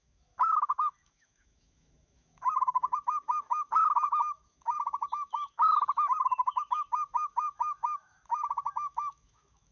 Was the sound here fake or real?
fake